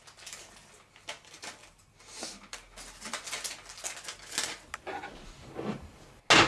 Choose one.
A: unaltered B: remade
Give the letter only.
A